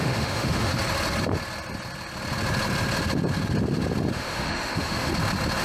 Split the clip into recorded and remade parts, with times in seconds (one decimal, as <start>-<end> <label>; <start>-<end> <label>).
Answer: 0.0-0.7 remade; 0.7-4.1 recorded; 4.1-5.1 remade; 5.1-5.6 recorded